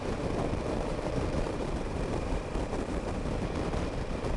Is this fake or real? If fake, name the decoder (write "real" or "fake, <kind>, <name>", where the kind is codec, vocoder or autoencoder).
fake, vocoder, BigVGAN v2